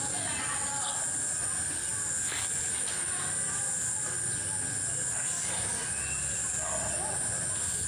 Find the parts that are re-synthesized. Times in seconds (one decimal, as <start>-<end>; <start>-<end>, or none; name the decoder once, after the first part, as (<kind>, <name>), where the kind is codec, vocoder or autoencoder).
none